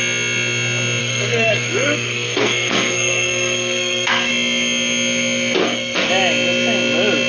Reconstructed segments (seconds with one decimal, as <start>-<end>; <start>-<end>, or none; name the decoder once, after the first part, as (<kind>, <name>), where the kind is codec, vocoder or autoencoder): 1.0-4.3 (codec, SNAC); 5.6-6.1